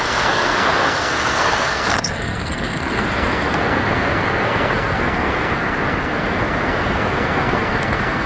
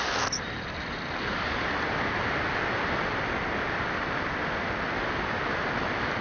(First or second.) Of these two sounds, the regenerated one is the first